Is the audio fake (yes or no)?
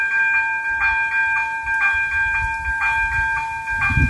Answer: no